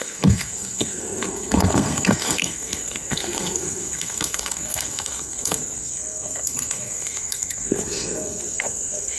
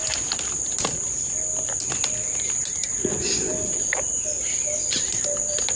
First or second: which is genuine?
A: second